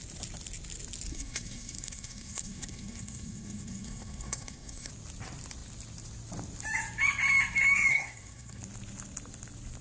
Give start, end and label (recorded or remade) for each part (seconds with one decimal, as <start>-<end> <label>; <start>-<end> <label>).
0.0-1.1 recorded; 1.1-4.9 remade; 4.9-7.9 recorded; 7.9-8.6 remade; 8.6-9.8 recorded